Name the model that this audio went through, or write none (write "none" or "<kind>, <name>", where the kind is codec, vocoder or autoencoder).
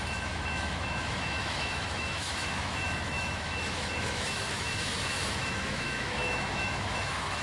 autoencoder, DAC-VAE